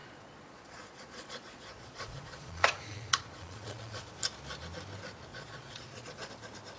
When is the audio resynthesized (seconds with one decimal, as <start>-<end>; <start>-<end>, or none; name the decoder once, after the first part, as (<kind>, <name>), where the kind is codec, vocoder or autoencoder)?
0.0-4.1 (vocoder, Vocos); 5.3-6.3